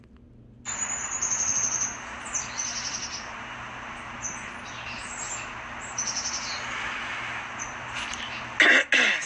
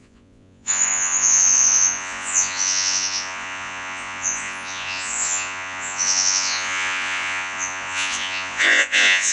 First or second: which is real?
first